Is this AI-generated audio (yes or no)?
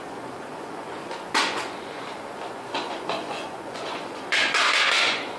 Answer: yes